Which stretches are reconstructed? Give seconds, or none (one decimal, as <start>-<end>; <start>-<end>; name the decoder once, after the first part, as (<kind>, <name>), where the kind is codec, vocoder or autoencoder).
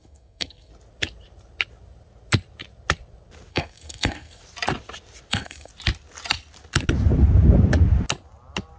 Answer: 0.0-0.7 (codec, SNAC); 3.5-4.4; 5.3-5.7